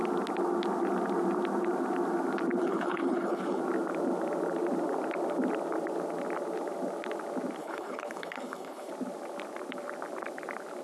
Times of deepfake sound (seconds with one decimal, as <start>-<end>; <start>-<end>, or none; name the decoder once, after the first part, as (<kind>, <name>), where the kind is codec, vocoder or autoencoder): 2.6-3.6 (codec, HILCodec); 7.6-8.9